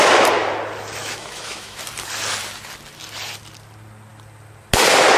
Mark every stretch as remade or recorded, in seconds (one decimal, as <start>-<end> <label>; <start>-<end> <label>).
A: 0.0-1.0 recorded; 1.0-1.8 remade; 1.8-5.2 recorded